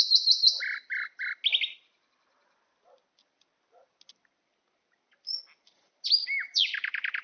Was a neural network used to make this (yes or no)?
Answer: no